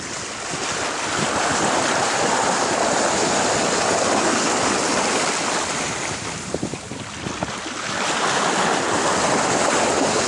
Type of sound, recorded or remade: recorded